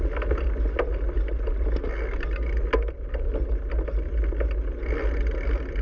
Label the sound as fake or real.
real